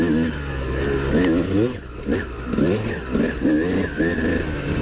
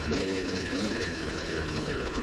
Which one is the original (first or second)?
first